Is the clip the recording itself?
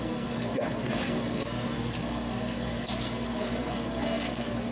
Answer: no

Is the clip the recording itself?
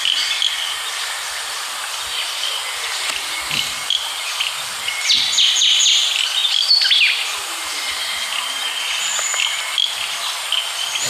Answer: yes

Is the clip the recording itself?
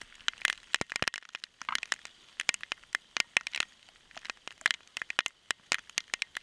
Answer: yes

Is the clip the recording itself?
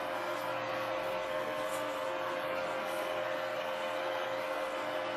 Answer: no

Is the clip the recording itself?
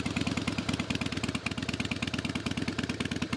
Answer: yes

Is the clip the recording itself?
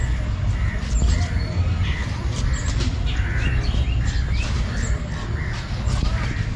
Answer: yes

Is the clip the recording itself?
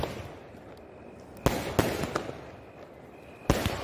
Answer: yes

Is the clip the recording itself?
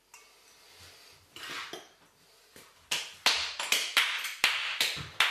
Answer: yes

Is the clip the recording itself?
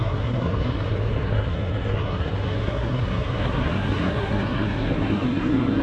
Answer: no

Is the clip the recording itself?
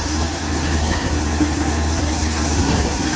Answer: no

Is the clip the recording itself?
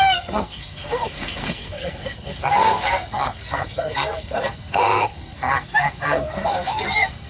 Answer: no